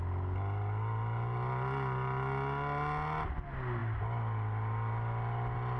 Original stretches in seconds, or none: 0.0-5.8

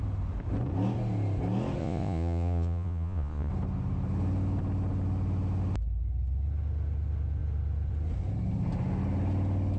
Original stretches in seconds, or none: 0.0-1.8; 3.5-9.8

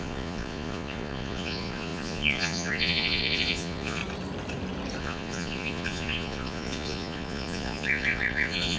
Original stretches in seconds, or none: 4.0-5.0

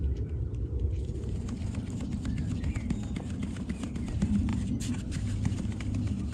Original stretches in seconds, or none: 0.0-4.5; 5.8-6.3

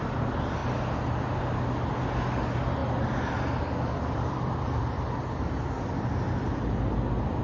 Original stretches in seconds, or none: 0.0-2.8

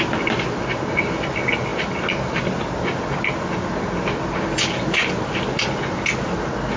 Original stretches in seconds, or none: 0.0-6.8